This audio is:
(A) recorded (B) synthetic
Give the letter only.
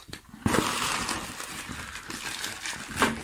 A